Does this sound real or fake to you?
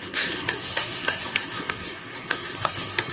fake